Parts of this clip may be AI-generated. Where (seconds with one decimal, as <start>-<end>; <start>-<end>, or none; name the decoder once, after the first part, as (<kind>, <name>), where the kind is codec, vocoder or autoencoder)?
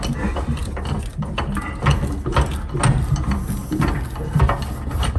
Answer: 0.6-1.4 (vocoder, BigVGAN v2); 2.3-2.8